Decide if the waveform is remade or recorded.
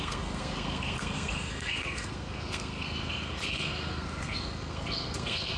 remade